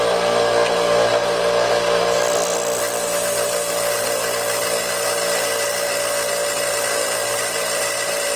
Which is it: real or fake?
real